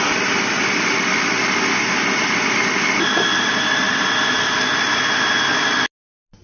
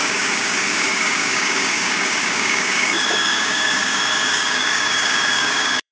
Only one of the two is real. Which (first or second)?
first